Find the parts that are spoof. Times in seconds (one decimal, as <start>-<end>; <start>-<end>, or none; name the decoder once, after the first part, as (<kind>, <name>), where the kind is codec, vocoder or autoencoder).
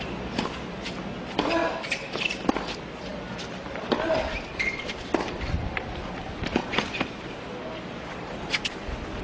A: none